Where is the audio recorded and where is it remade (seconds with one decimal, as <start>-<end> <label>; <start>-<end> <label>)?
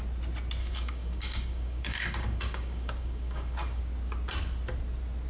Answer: 0.0-0.6 recorded; 0.6-3.8 remade; 3.8-5.3 recorded